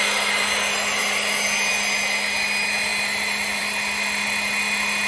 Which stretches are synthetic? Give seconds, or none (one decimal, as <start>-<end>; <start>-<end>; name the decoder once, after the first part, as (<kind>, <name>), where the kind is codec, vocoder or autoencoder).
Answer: none